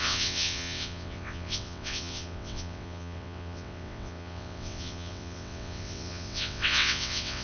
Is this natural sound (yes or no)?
no